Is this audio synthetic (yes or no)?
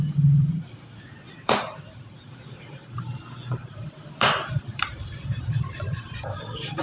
yes